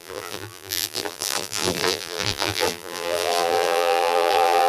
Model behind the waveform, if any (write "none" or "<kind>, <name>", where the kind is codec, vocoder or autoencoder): vocoder, BigVGAN v2